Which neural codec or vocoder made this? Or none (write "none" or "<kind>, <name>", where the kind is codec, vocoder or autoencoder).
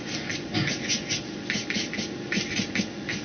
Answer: none